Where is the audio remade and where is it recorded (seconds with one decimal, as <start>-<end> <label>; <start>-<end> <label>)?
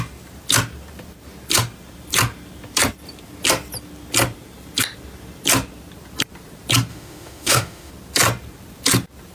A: 0.0-6.9 recorded; 6.9-7.9 remade; 7.9-9.3 recorded